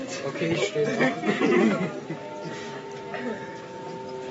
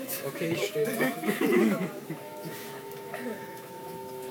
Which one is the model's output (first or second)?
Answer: second